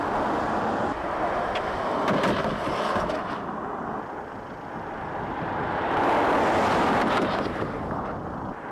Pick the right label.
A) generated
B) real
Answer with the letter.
B